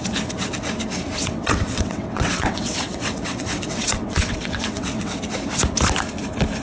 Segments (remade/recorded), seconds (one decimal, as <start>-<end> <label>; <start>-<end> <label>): 0.0-1.2 recorded; 1.2-5.2 remade; 5.2-6.6 recorded